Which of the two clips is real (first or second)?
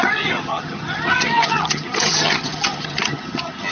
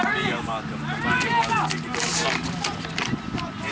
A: second